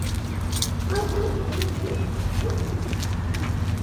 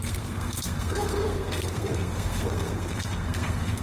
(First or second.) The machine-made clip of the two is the second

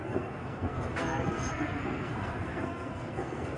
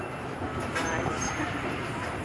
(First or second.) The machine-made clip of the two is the first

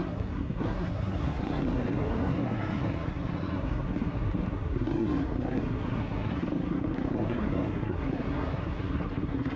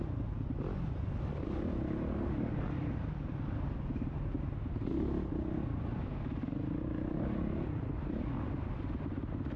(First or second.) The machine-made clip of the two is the first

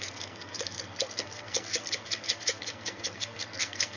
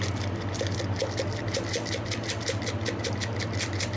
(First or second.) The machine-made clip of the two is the first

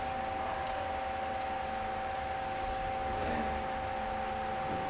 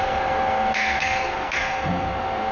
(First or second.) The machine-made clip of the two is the second